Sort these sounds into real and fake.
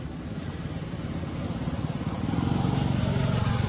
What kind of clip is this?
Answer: real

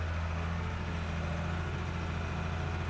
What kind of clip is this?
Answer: real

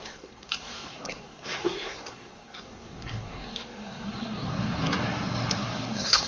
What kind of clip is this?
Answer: fake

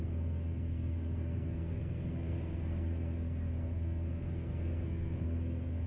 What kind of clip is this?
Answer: fake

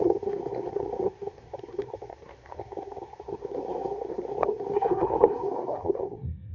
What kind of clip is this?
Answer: fake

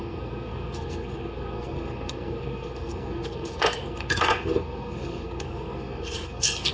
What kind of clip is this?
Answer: fake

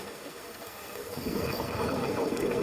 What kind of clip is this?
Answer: fake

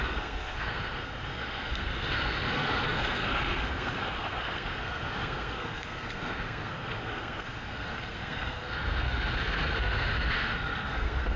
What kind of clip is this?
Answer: fake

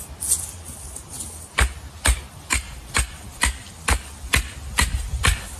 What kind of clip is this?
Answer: real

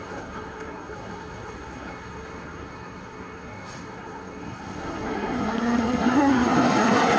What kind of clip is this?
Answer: fake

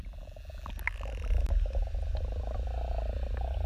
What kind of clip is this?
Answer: real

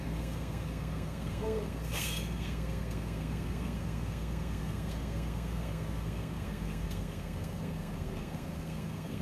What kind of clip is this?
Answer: fake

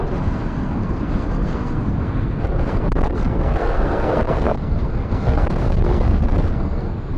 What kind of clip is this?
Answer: fake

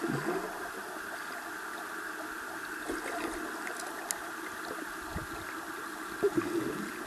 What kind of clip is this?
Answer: real